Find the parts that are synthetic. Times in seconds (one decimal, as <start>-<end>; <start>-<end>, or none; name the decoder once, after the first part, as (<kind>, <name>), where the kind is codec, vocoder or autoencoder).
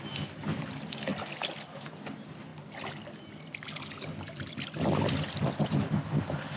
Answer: none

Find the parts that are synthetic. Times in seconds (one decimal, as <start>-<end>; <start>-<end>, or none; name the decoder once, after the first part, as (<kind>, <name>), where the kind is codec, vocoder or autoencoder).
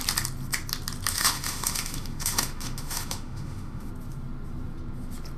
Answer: 1.1-3.9 (autoencoder, DAC-VAE)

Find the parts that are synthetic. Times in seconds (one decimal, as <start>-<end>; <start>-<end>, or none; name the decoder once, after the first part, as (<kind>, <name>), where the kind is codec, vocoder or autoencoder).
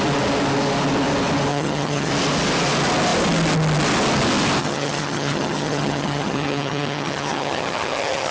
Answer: 1.5-2.1 (vocoder, HiFi-GAN); 4.6-8.3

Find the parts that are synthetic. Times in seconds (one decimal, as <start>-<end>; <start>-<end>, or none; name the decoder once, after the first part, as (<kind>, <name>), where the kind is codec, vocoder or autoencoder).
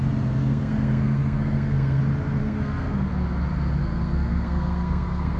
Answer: 0.4-2.0 (codec, SNAC); 2.4-3.1; 3.8-5.4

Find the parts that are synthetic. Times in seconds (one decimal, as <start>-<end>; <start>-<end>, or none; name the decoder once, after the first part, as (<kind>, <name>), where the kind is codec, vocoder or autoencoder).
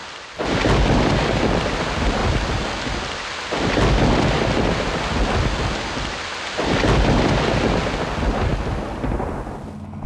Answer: none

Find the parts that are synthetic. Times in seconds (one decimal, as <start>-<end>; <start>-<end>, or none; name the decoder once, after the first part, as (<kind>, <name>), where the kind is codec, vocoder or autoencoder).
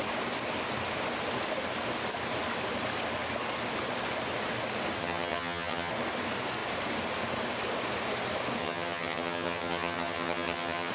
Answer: 5.0-5.9 (vocoder, HiFi-GAN); 8.6-10.9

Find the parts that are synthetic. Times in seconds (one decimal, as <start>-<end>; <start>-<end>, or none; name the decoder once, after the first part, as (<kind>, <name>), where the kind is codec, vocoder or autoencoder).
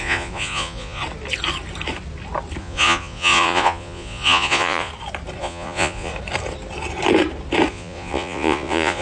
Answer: 0.0-1.0 (vocoder, Vocos); 2.6-4.9; 5.4-6.1; 7.7-9.0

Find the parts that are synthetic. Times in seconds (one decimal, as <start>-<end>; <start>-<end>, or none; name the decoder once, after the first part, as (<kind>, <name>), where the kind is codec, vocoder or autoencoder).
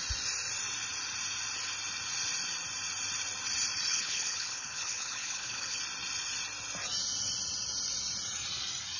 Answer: 3.9-5.8 (codec, HILCodec)